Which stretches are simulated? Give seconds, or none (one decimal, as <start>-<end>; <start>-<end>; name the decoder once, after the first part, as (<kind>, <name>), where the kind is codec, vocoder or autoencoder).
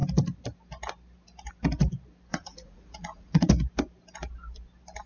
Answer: 2.3-3.5 (vocoder, Vocos)